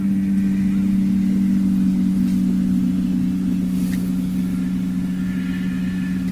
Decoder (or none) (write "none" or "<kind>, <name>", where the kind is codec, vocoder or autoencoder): none